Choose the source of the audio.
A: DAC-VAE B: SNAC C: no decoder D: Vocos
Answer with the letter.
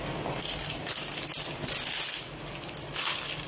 C